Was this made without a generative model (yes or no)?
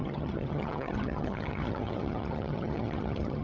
no